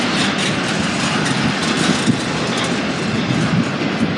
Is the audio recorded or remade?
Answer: recorded